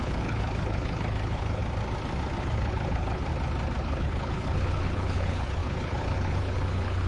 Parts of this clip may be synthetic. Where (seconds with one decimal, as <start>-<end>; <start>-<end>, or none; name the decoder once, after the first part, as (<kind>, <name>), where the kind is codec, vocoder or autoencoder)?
0.0-1.6 (codec, HILCodec); 2.4-3.3; 3.8-7.1